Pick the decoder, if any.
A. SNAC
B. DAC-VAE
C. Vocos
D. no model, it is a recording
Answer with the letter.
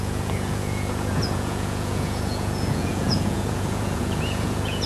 C